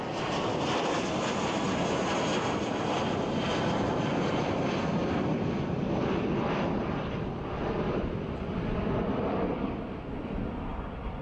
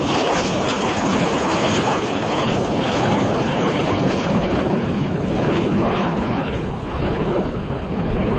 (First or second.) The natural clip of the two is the first